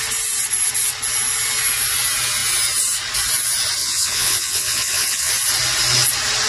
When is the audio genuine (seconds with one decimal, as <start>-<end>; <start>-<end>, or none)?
0.0-3.8; 5.3-6.5